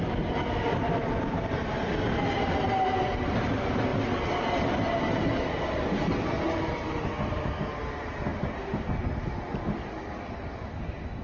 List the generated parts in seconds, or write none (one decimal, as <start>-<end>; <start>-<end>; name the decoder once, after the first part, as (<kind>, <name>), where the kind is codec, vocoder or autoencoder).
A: none